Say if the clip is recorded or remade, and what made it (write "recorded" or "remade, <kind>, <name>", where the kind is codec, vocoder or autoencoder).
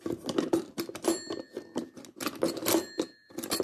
recorded